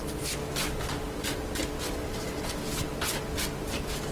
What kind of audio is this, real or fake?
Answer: real